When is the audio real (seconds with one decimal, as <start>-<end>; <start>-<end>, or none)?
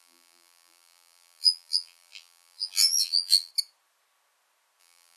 3.5-4.8